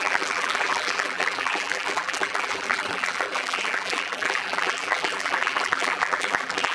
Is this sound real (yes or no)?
no